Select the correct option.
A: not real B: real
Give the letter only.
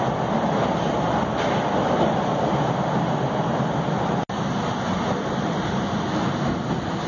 B